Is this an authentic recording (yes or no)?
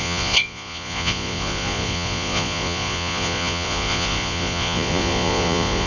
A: no